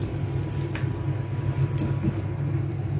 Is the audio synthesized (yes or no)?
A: no